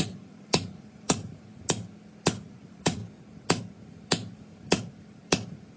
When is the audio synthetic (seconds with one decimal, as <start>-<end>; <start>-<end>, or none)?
0.0-1.5; 2.4-3.0